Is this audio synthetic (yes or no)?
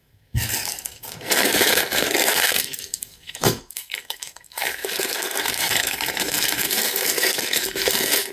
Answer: yes